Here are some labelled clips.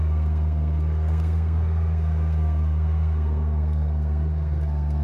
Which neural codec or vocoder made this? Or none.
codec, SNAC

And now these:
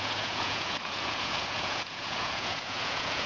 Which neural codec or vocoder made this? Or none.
vocoder, Vocos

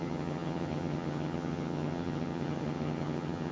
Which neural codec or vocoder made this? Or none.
vocoder, HiFi-GAN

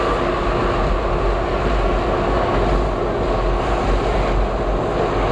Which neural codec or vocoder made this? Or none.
none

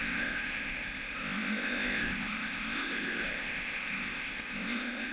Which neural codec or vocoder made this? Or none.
codec, ZipCodec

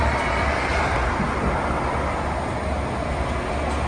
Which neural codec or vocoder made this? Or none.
none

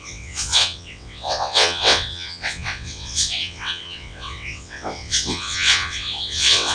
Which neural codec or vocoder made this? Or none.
vocoder, WaveNeXt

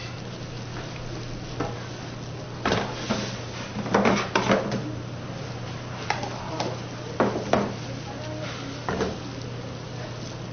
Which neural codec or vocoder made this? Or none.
none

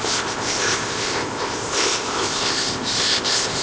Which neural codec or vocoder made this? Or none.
codec, ZipCodec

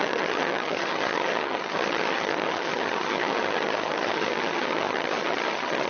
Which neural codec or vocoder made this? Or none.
vocoder, HiFi-GAN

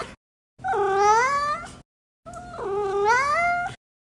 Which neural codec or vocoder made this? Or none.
none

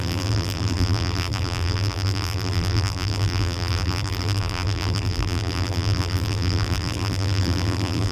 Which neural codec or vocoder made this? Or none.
vocoder, BigVGAN v2